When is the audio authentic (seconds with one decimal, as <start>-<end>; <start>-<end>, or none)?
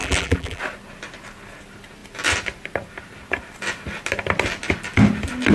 0.6-5.5